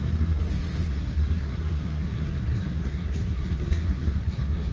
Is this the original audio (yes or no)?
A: no